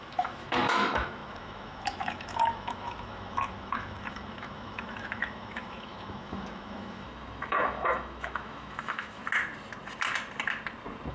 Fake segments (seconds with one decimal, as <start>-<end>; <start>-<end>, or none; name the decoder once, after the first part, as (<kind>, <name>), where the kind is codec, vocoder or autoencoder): 0.0-9.2 (autoencoder, DAC-VAE)